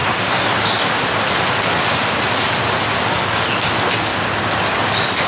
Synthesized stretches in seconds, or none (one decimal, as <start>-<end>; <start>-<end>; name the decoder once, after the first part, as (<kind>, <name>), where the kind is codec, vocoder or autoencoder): none